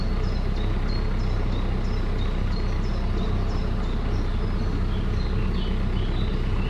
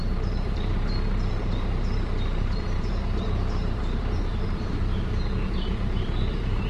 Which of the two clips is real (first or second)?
first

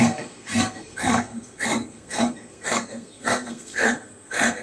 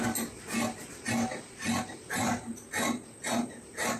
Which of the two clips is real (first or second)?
second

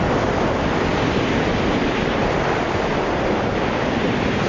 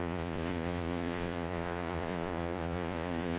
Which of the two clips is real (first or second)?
first